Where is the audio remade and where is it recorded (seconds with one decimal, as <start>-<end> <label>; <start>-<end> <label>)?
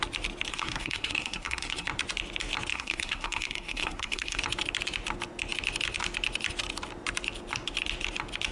0.0-0.5 recorded; 0.5-1.9 remade; 1.9-2.7 recorded; 2.7-4.4 remade; 4.4-8.5 recorded